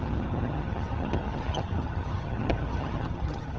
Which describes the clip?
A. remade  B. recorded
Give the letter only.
A